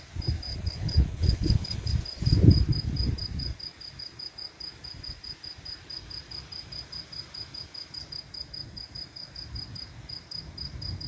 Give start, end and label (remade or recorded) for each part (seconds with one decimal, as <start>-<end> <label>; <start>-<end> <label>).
0.0-0.5 recorded; 0.5-1.9 remade; 1.9-11.1 recorded